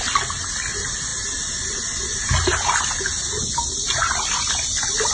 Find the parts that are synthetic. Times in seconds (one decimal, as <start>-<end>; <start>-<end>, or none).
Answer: none